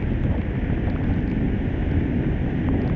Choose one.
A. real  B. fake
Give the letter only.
A